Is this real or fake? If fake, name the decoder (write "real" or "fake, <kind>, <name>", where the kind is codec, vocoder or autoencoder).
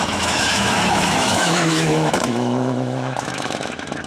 fake, autoencoder, DAC-VAE